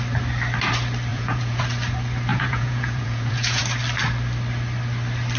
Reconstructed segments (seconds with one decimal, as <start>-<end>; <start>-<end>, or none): 1.1-1.6; 2.3-3.6